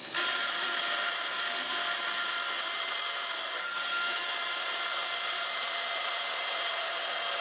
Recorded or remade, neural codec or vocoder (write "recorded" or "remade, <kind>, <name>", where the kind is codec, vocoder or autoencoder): recorded